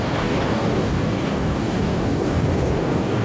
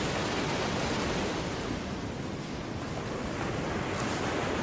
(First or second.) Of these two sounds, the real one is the second